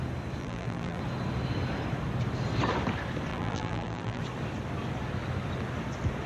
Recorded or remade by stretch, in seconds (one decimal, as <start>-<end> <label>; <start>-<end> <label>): 0.0-0.4 recorded; 0.4-1.0 remade; 1.0-3.3 recorded; 3.3-4.2 remade; 4.2-6.3 recorded